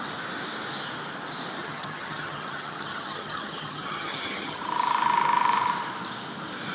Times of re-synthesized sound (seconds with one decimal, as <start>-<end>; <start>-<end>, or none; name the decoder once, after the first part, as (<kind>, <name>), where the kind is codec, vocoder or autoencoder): 1.6-4.6 (vocoder, HiFi-GAN)